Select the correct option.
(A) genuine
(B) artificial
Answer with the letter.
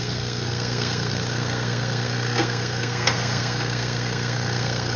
B